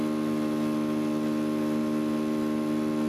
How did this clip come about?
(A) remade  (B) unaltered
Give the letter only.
B